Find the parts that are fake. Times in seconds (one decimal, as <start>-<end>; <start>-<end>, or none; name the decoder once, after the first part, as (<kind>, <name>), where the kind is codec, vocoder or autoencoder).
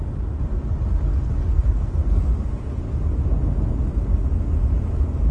1.5-2.2 (codec, SNAC)